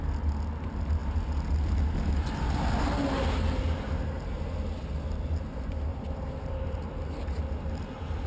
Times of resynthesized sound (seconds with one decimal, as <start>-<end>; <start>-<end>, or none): 5.9-6.8